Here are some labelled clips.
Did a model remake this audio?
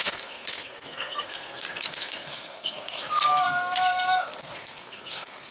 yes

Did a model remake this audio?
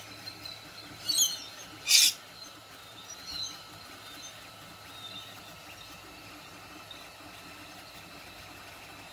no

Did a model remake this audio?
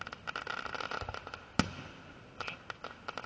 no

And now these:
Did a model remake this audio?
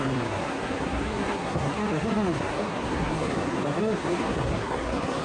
yes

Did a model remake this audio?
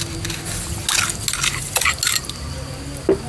no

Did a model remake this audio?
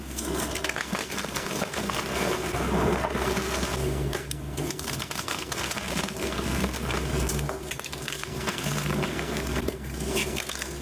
yes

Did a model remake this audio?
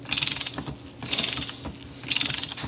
no